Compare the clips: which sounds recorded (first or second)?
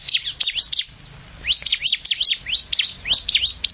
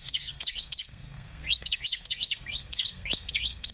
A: first